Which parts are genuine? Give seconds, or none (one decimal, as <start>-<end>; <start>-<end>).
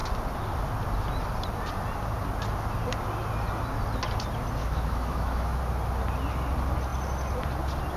0.0-4.6; 5.6-8.0